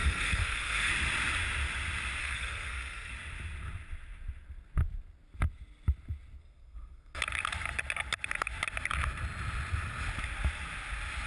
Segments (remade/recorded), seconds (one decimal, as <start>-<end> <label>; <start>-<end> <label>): 0.0-0.9 remade; 0.9-2.2 recorded; 2.2-3.1 remade; 3.1-6.4 recorded; 6.4-7.2 remade; 7.2-11.3 recorded